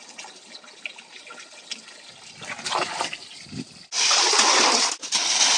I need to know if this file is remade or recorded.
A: recorded